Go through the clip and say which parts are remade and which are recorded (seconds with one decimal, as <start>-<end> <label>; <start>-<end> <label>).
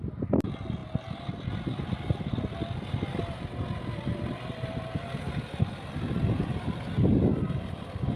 0.0-8.2 recorded